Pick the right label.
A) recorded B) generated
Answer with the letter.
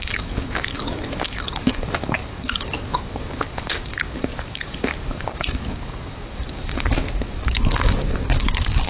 B